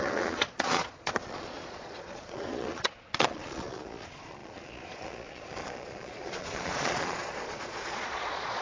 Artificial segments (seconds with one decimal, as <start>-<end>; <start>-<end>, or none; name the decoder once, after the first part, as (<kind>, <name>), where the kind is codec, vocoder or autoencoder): 0.0-8.6 (vocoder, Vocos)